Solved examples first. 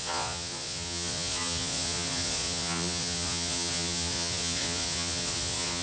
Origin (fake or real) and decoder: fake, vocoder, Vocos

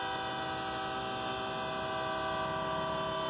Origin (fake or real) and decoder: real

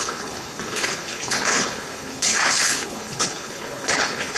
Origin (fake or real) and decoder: fake, codec, HILCodec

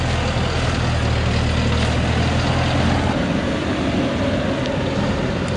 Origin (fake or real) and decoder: real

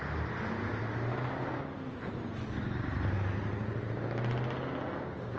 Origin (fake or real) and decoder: real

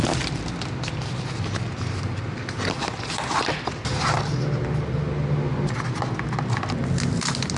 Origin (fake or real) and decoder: real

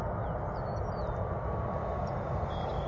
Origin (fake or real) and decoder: real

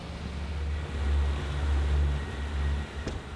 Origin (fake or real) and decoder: real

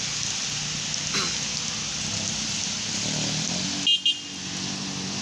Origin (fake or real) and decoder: real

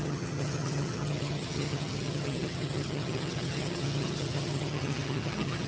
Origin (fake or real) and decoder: fake, vocoder, HiFi-GAN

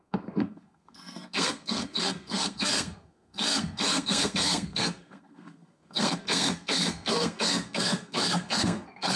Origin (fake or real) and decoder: fake, codec, SNAC